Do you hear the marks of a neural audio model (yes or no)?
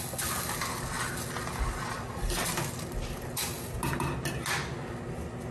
no